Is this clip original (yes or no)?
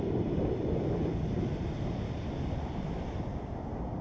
yes